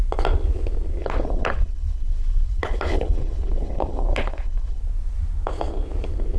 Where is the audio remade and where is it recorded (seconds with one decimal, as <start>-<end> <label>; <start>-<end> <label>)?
0.0-1.0 recorded; 1.0-4.8 remade; 4.8-6.4 recorded